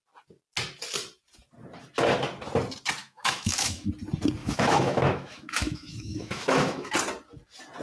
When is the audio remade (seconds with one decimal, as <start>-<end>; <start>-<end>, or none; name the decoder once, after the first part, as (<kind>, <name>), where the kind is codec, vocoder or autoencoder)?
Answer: 3.0-3.9 (autoencoder, DAC-VAE); 4.4-6.9